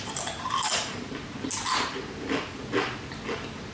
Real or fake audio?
real